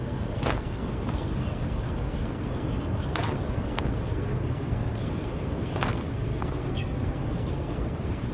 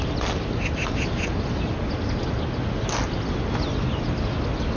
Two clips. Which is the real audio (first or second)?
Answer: second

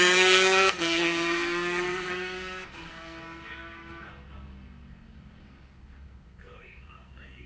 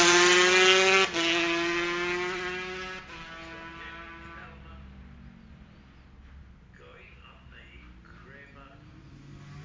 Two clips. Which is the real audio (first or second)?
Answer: second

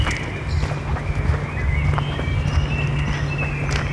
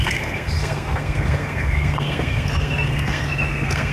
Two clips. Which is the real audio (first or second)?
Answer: first